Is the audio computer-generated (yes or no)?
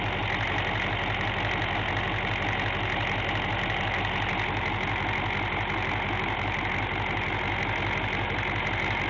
no